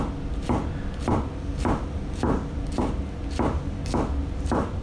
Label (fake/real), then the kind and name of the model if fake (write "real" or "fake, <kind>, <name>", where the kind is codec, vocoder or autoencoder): real